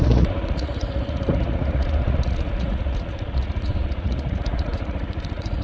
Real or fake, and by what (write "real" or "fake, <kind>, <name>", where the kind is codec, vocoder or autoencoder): fake, vocoder, Vocos